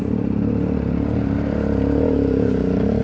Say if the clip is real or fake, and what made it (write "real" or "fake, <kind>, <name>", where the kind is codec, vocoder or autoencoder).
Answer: real